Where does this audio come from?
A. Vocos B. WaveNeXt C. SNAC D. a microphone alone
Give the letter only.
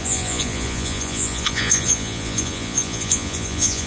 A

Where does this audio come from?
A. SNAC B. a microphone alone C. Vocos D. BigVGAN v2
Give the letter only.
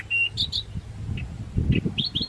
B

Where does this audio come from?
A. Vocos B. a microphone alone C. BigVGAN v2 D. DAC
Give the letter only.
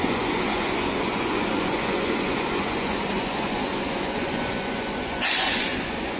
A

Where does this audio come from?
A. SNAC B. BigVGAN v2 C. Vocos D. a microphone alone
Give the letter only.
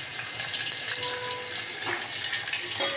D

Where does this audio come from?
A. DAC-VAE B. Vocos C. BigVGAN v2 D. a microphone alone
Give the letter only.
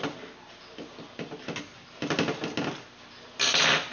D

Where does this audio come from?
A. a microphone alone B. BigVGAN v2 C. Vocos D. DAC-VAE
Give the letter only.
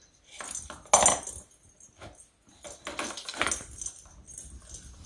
A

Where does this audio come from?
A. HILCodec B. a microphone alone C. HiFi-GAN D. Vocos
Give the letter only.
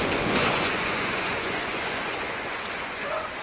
D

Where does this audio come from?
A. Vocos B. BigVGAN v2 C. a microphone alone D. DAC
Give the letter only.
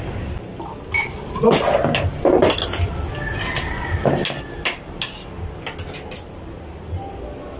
C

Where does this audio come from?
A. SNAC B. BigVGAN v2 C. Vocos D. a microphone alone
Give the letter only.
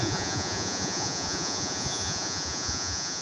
C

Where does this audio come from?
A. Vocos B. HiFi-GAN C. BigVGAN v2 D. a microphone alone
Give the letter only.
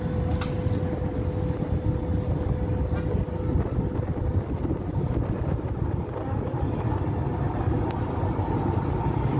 D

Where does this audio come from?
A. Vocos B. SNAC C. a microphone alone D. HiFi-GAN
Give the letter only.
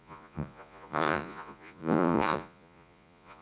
A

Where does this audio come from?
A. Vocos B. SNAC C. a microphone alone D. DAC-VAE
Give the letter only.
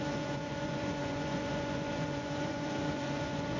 A